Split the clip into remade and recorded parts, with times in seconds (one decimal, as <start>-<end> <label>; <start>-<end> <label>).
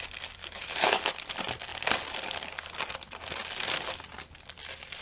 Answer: 0.0-0.4 recorded; 0.4-1.0 remade; 1.0-5.0 recorded